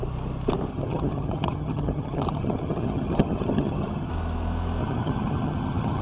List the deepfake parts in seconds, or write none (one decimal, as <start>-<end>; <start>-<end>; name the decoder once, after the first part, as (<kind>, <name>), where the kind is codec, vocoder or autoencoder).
0.7-4.1 (vocoder, HiFi-GAN); 4.8-6.0